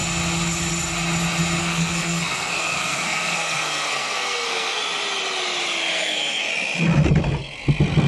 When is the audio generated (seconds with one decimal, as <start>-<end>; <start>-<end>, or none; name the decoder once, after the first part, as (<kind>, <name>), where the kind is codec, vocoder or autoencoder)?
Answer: 1.6-4.8 (codec, SNAC); 5.9-6.5